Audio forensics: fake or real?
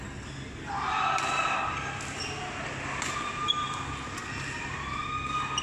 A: real